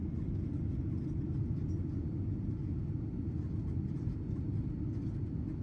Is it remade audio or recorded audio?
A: recorded